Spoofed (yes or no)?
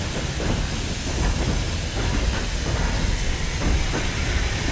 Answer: no